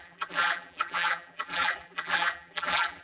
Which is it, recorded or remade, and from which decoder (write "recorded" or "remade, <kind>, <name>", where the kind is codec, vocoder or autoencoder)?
remade, vocoder, BigVGAN v2